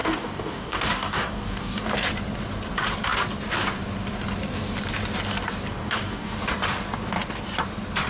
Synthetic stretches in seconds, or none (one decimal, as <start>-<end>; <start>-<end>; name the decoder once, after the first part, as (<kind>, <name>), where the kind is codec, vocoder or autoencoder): 0.0-2.1 (codec, DAC); 5.7-6.4